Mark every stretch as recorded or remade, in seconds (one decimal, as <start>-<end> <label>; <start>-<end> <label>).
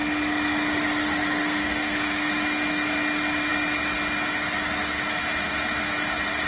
0.0-1.3 recorded; 1.3-2.3 remade; 2.3-6.5 recorded